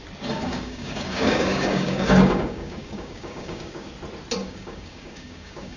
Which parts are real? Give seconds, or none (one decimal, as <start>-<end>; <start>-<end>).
0.0-0.4; 3.9-4.4

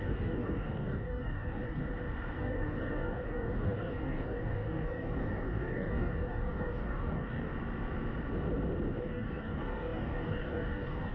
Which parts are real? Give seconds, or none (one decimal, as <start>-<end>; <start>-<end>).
1.8-2.4; 7.5-9.0

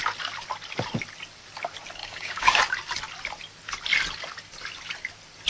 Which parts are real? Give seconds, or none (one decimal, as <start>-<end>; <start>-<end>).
0.0-2.0; 2.6-5.5

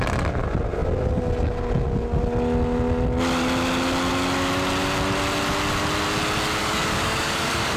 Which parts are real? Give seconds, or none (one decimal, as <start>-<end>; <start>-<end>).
0.0-6.6

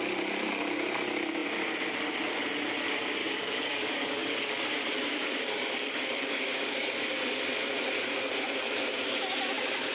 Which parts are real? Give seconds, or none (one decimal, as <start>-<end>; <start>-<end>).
0.0-3.2; 7.0-9.9

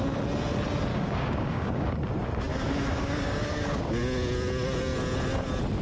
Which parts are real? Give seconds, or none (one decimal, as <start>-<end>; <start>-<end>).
0.0-0.9; 2.0-2.5; 4.0-5.8

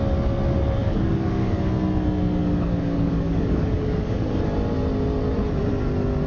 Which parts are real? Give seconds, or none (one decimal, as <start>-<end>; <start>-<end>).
0.0-0.8; 1.6-2.4; 4.4-6.3